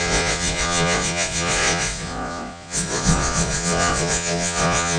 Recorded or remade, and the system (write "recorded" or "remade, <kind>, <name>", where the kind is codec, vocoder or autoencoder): remade, vocoder, Vocos